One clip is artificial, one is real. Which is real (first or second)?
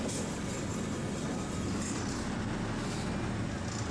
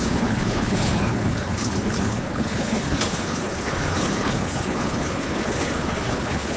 first